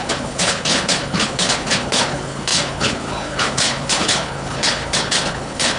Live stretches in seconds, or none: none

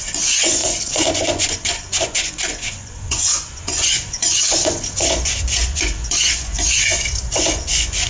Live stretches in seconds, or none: none

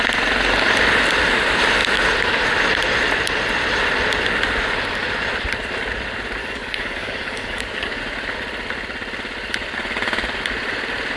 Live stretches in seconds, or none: 0.0-6.4; 8.0-11.2

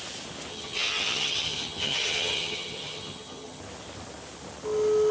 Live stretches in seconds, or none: 0.0-0.5; 3.6-5.1

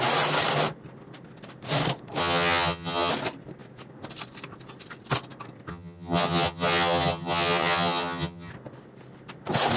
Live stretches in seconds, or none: 0.0-2.2; 3.1-5.7; 8.5-9.8

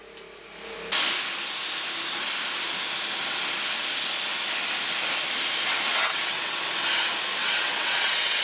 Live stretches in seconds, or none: 0.0-5.9; 6.6-7.4

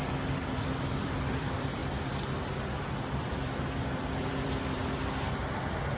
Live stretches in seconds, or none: 1.8-2.4; 4.8-6.0